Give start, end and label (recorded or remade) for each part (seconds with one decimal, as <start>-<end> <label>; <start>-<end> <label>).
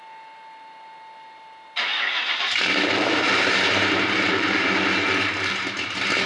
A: 0.0-1.9 recorded; 1.9-5.7 remade; 5.7-6.3 recorded